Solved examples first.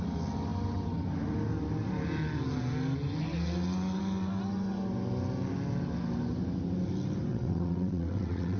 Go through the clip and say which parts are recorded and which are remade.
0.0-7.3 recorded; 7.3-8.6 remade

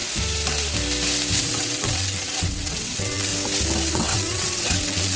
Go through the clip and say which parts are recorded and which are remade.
0.0-1.4 recorded; 1.4-3.3 remade; 3.3-3.9 recorded; 3.9-5.2 remade